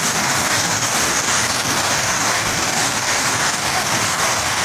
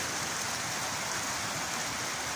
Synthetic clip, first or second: first